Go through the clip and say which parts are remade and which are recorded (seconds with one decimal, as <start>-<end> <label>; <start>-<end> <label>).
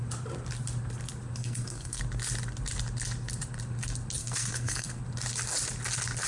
0.0-1.4 recorded; 1.4-2.0 remade; 2.0-4.2 recorded; 4.2-5.0 remade; 5.0-6.3 recorded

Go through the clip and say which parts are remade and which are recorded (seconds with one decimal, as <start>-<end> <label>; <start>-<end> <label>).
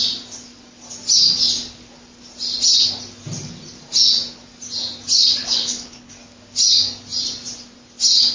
0.0-5.4 recorded; 5.4-6.1 remade; 6.1-8.3 recorded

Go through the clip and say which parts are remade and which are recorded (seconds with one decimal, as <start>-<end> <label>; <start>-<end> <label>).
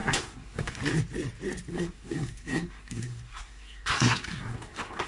0.0-0.8 remade; 0.8-1.7 recorded; 1.7-5.1 remade